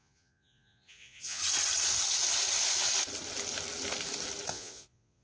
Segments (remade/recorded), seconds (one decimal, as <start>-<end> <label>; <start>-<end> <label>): 0.0-1.4 remade; 1.4-4.5 recorded; 4.5-5.2 remade